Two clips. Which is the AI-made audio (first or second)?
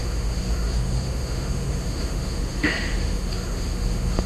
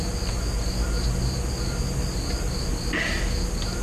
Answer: first